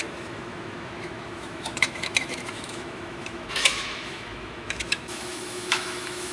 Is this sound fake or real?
fake